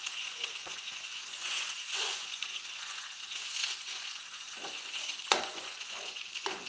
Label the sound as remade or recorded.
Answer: remade